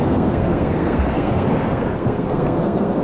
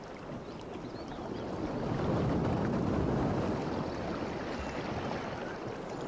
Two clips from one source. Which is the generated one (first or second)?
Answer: first